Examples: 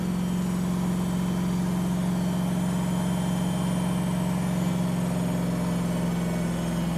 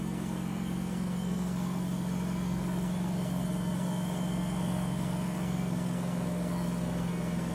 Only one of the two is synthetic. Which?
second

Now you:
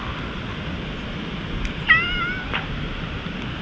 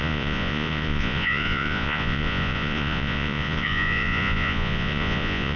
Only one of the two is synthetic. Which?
second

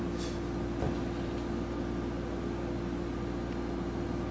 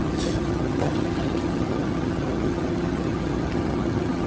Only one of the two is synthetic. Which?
second